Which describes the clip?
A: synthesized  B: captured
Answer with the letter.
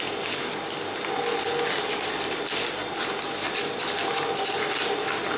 B